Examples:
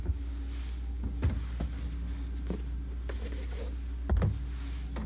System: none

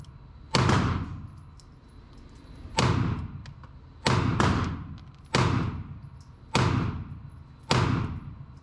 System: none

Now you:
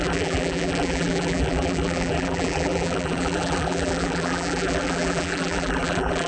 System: vocoder, BigVGAN v2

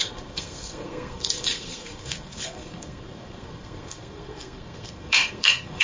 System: codec, SNAC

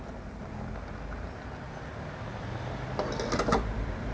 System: none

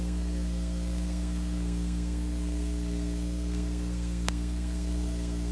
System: codec, SNAC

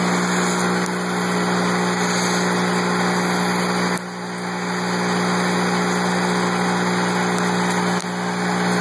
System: none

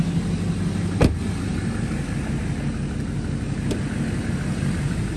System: none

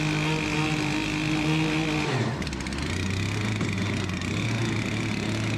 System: none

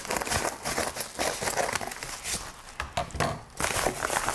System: none